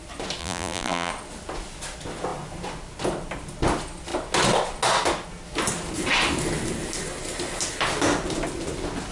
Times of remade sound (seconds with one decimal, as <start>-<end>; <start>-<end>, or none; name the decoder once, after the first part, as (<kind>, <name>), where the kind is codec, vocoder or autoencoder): 0.4-1.1 (vocoder, BigVGAN v2)